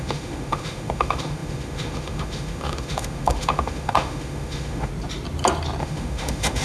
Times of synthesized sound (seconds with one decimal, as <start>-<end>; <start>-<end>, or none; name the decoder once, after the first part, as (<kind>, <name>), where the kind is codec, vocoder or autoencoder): 0.0-4.9 (autoencoder, DAC-VAE); 5.8-6.6